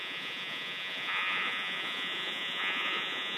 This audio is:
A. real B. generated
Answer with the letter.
B